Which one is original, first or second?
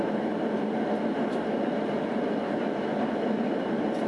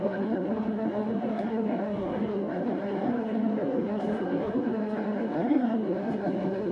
first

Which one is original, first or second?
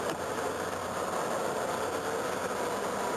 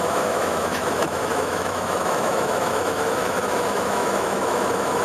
first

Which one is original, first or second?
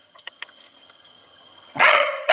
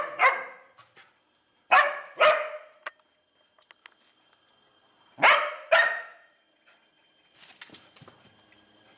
second